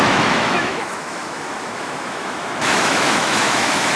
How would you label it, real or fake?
fake